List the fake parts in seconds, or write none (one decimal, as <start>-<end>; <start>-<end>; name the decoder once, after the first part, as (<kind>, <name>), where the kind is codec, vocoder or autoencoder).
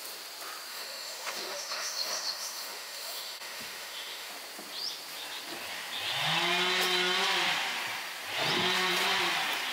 0.7-4.3 (autoencoder, DAC-VAE)